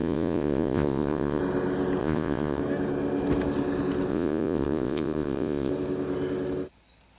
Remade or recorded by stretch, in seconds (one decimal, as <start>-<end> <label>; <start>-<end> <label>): 0.0-1.4 remade; 1.4-2.0 recorded; 2.0-2.6 remade; 2.6-4.1 recorded; 4.1-5.7 remade; 5.7-7.2 recorded